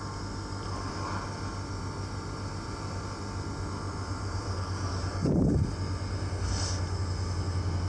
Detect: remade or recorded recorded